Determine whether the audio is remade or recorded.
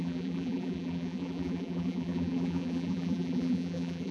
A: remade